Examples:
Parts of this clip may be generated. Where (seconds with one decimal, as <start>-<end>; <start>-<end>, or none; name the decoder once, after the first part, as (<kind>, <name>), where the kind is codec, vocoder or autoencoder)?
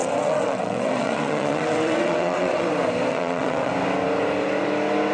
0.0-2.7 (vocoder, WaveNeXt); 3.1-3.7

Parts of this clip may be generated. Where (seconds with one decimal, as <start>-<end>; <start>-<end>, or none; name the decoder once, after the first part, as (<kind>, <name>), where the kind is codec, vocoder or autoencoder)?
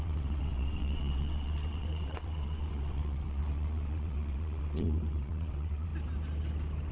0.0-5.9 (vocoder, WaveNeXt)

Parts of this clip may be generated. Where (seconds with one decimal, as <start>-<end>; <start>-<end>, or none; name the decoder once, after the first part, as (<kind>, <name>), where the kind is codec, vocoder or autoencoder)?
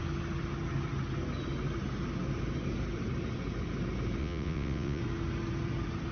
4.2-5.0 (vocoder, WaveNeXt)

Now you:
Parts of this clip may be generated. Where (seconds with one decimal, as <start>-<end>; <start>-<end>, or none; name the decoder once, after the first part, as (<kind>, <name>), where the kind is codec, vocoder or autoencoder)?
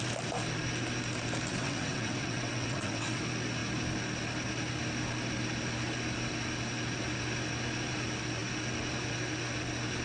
1.5-3.2 (vocoder, WaveNeXt)